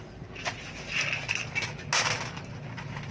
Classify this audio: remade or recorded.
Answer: recorded